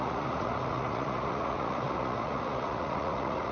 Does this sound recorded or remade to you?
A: remade